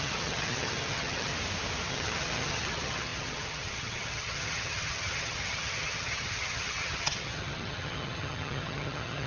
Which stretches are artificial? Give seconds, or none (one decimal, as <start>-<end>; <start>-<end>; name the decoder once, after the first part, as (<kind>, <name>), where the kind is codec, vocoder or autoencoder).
0.0-1.3 (vocoder, HiFi-GAN); 1.9-9.3